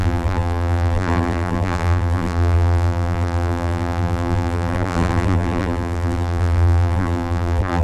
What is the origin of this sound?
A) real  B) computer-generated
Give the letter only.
B